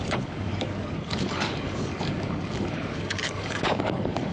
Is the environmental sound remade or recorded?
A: remade